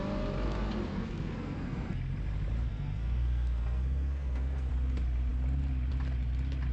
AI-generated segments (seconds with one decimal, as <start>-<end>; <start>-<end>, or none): 0.9-2.0; 2.7-4.7